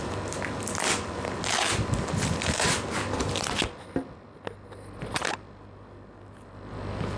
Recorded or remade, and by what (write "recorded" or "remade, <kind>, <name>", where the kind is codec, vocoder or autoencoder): recorded